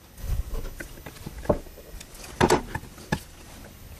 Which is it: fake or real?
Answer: real